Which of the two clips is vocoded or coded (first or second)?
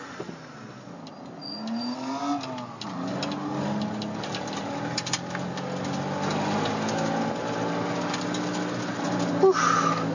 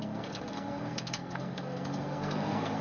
second